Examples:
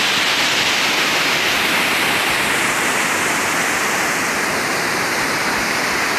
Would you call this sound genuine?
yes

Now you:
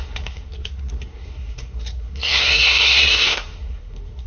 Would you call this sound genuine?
no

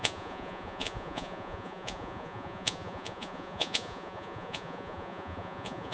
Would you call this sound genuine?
no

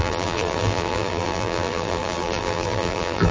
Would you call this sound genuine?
no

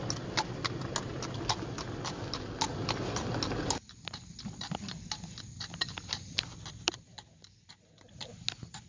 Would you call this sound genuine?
yes